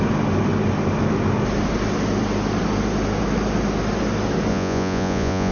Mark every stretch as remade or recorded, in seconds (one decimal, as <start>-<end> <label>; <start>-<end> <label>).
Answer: 0.0-4.5 recorded; 4.5-5.5 remade